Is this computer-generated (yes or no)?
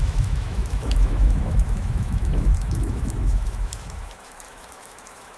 yes